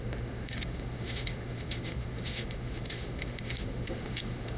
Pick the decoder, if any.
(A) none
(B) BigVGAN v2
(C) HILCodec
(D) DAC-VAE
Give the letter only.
D